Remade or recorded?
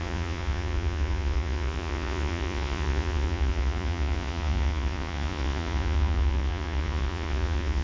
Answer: remade